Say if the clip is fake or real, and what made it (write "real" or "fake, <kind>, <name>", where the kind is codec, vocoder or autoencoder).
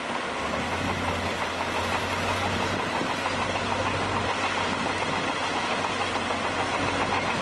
real